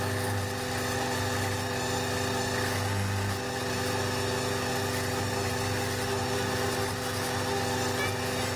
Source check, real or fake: real